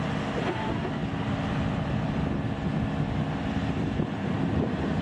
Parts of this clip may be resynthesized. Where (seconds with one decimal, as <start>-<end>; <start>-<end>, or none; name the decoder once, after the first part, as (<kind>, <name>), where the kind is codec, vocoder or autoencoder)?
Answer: none